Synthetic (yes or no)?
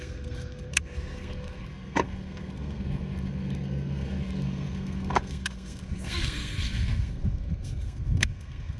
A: yes